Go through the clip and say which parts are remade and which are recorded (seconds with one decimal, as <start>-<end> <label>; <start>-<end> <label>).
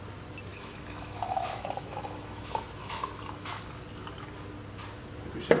0.0-0.5 recorded; 0.5-3.6 remade; 3.6-5.6 recorded